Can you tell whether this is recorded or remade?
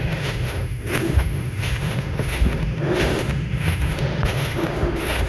remade